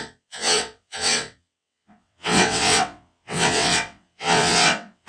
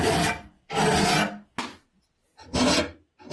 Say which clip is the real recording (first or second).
second